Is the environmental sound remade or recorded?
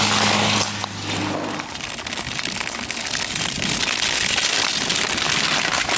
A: recorded